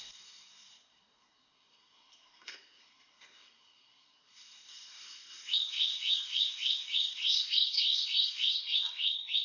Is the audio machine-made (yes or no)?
yes